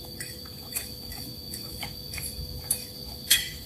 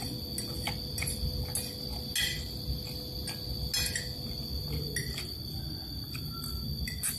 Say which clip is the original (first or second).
second